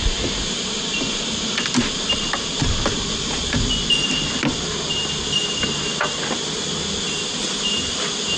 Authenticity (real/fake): real